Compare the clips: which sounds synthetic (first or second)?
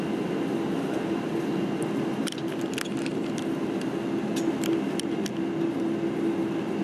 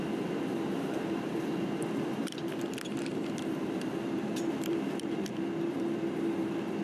second